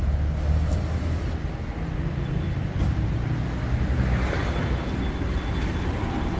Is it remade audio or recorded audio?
recorded